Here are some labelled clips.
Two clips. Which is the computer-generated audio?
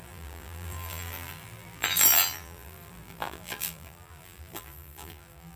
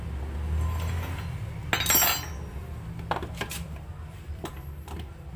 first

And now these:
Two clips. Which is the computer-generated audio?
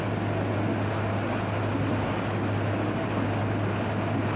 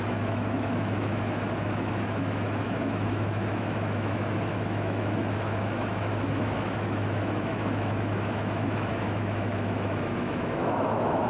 second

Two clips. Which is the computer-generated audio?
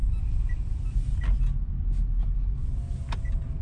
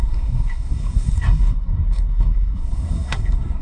second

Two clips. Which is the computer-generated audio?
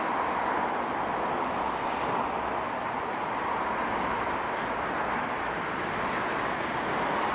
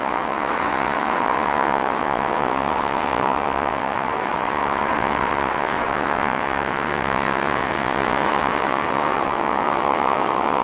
second